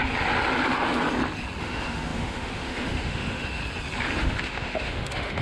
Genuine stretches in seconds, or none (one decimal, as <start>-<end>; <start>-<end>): 0.0-1.6; 3.6-4.2